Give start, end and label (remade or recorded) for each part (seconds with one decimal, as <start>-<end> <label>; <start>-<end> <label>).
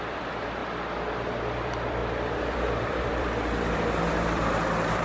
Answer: 0.0-0.6 remade; 0.6-1.4 recorded; 1.4-5.0 remade